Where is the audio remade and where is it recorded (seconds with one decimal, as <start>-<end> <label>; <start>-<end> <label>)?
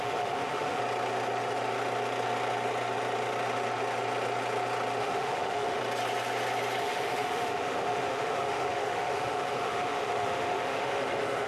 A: 0.0-0.8 remade; 0.8-5.0 recorded; 5.0-5.8 remade; 5.8-6.8 recorded; 6.8-11.5 remade